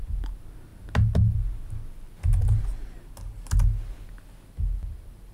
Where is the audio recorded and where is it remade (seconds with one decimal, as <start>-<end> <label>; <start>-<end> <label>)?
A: 0.0-5.3 recorded